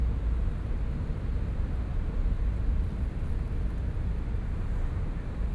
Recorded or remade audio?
recorded